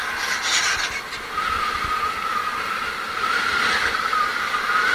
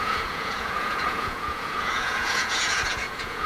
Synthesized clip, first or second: second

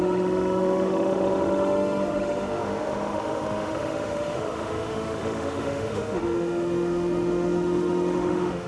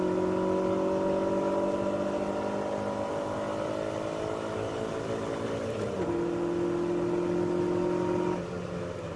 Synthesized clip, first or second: first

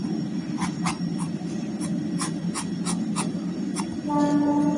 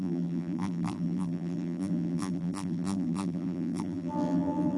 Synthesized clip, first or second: second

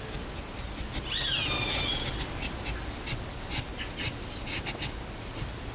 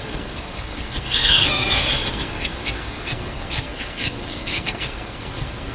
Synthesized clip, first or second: second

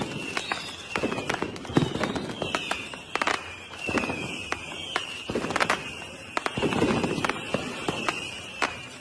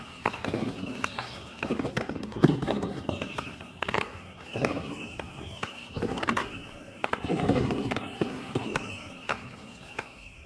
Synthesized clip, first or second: second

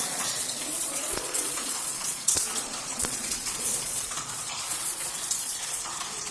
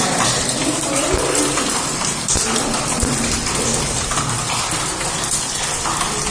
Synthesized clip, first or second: first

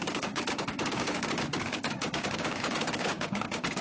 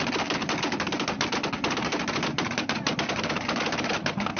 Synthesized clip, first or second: first